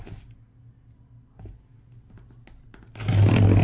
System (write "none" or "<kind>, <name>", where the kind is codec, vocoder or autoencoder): none